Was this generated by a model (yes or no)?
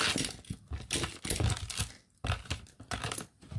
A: no